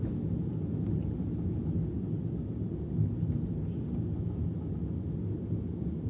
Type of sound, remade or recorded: recorded